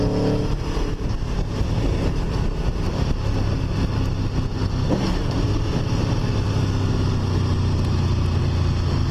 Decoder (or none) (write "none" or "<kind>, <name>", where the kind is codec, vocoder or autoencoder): none